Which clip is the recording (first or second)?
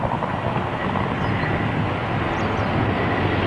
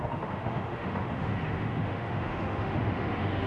first